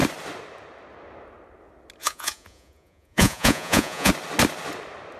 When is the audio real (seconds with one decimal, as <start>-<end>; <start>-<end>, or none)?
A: 0.0-2.0; 4.1-5.2